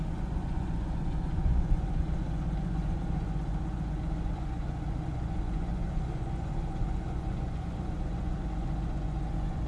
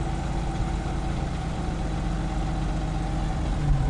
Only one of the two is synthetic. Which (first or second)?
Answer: first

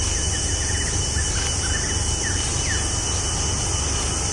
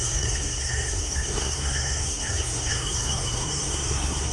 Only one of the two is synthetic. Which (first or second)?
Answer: second